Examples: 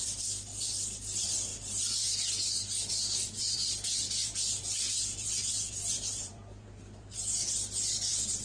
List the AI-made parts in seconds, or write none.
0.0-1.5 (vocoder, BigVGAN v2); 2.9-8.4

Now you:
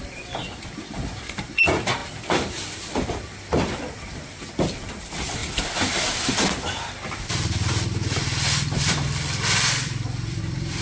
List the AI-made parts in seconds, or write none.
0.0-10.8 (vocoder, BigVGAN v2)

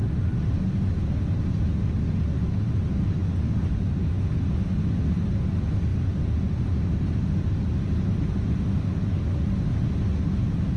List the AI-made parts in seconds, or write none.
none

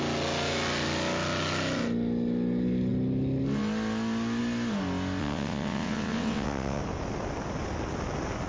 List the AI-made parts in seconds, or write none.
5.2-6.8 (vocoder, WaveNeXt)

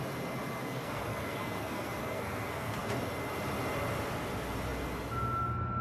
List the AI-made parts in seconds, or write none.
0.6-2.9 (codec, SNAC)

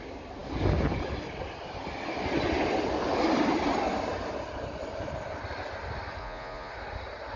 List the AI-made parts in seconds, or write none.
6.2-6.7 (vocoder, Vocos)

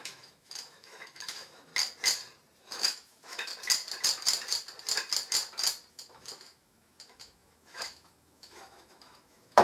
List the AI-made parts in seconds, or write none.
0.0-1.7 (autoencoder, DAC-VAE); 2.6-3.5; 5.9-9.6